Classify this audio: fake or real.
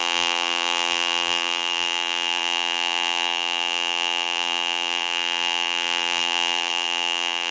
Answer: fake